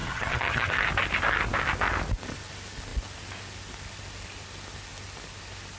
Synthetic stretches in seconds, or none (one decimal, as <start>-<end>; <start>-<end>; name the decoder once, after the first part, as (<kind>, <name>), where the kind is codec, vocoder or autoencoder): 0.0-0.7 (vocoder, HiFi-GAN)